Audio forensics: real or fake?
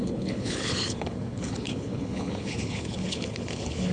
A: fake